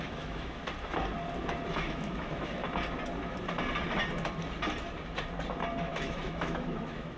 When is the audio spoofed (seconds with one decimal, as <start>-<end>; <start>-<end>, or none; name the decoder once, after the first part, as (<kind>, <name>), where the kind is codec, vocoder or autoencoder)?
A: 0.0-0.6 (autoencoder, DAC-VAE); 1.7-2.6; 5.8-7.2

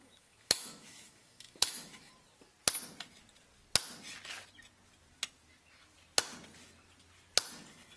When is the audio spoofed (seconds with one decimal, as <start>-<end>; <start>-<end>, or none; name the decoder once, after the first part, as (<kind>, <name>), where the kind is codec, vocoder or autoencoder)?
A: 0.0-2.1 (autoencoder, DAC-VAE)